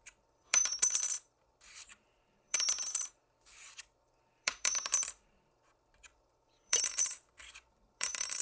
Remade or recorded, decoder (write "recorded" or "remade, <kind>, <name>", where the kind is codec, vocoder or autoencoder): remade, vocoder, BigVGAN v2